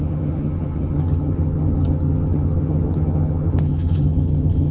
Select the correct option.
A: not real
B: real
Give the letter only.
A